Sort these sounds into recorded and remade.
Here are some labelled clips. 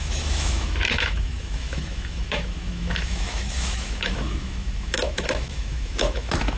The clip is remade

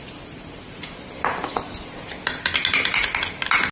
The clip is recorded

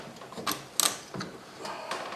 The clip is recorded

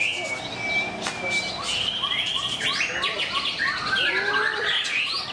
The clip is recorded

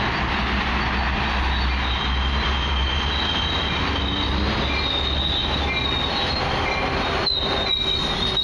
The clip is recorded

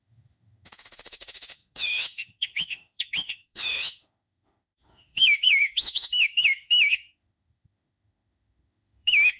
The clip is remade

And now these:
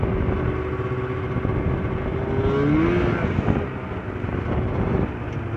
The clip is recorded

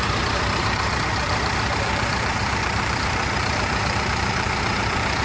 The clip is remade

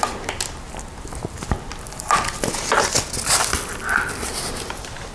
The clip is recorded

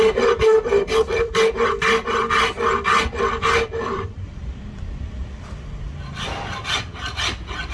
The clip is remade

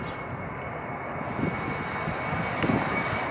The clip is recorded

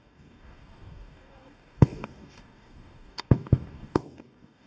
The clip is remade